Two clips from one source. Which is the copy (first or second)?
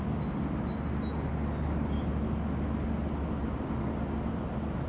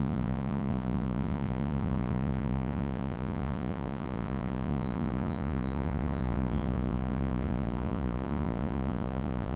second